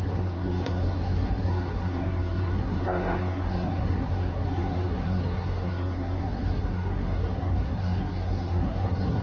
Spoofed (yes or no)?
yes